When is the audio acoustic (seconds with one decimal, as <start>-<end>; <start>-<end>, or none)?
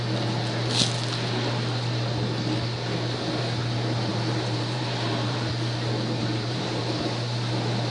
0.0-4.1; 5.5-6.2; 6.8-7.9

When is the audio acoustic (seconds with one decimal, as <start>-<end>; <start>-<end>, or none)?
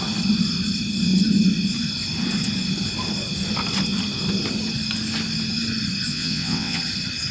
0.0-6.1; 6.8-7.3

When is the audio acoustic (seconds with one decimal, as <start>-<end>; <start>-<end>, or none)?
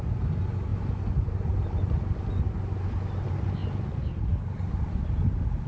0.0-5.7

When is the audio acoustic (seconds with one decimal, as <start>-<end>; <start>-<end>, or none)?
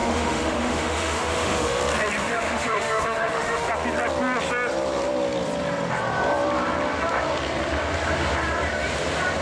1.8-2.2; 3.7-9.4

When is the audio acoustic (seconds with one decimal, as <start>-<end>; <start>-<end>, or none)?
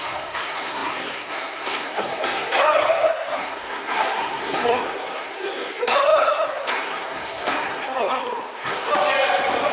8.9-9.7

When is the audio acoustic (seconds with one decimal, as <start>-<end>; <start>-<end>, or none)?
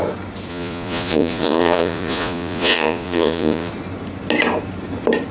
0.0-0.5; 3.7-5.3